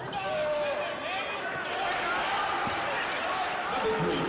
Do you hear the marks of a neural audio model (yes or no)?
no